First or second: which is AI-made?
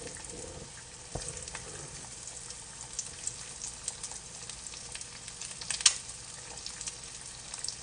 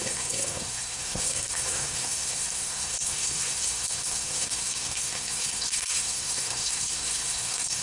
second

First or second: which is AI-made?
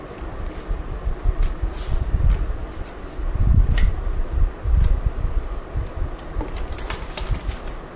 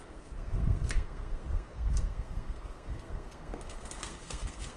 second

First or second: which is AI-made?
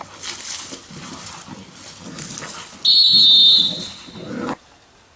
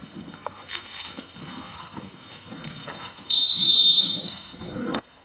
second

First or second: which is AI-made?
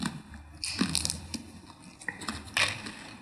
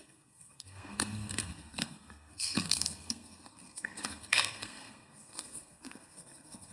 second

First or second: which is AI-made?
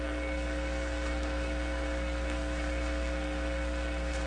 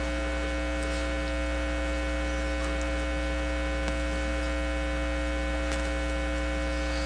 first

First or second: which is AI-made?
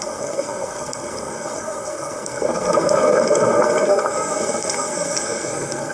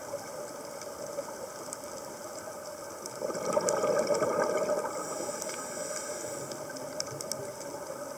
first